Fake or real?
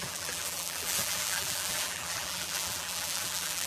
fake